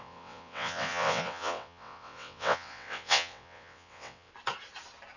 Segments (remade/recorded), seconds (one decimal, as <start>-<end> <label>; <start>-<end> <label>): 0.0-4.3 remade; 4.3-5.2 recorded